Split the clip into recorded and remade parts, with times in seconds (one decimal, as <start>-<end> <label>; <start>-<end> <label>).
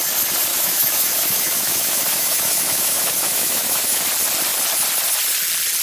0.0-0.5 recorded; 0.5-4.0 remade; 4.0-5.8 recorded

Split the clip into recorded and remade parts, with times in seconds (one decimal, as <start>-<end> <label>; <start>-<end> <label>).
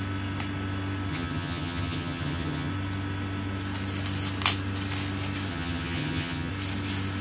0.0-1.1 recorded; 1.1-2.7 remade; 2.7-5.5 recorded; 5.5-6.5 remade; 6.5-7.2 recorded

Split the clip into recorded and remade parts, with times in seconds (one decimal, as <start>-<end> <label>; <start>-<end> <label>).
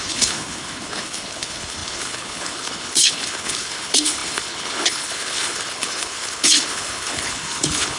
0.0-8.0 remade